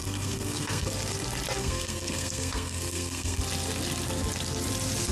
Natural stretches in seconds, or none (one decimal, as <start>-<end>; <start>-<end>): 0.9-1.6; 3.4-5.1